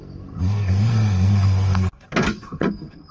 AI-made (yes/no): yes